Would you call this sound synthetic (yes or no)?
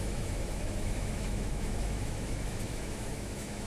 yes